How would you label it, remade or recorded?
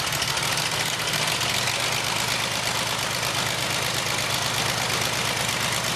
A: recorded